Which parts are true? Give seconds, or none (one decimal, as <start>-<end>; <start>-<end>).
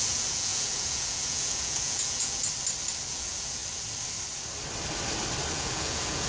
2.4-3.1; 3.6-5.5